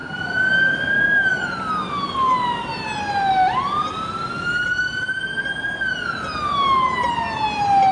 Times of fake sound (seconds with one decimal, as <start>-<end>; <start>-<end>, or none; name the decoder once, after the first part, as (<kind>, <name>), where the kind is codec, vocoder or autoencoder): 0.0-0.9 (vocoder, BigVGAN v2)